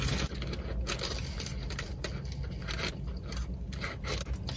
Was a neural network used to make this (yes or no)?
no